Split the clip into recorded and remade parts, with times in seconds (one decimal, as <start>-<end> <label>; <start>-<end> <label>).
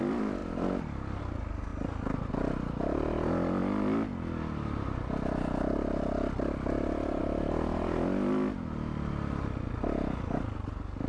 0.0-11.1 recorded